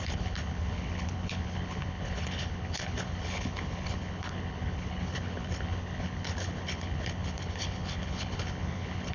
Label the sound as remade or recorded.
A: remade